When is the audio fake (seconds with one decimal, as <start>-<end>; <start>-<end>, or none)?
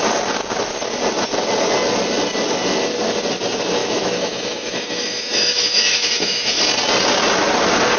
3.8-6.6